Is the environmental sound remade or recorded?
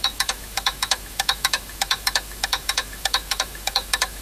remade